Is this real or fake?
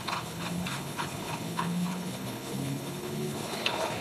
fake